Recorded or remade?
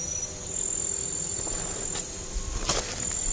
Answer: recorded